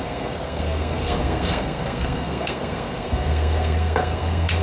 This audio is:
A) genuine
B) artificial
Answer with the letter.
B